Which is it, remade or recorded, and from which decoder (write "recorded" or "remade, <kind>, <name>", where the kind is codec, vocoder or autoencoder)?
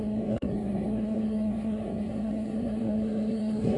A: remade, codec, SNAC